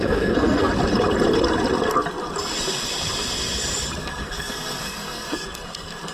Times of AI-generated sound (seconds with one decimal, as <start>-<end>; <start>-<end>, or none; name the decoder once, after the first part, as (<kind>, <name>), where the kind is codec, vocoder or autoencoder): 0.0-0.7 (codec, SNAC); 4.0-6.1